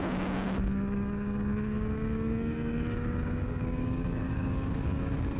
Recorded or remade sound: remade